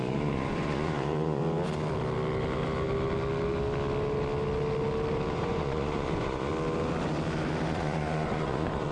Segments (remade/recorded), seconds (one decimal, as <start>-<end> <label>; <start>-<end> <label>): 0.0-1.4 remade; 1.4-5.3 recorded; 5.3-6.5 remade; 6.5-7.7 recorded; 7.7-8.9 remade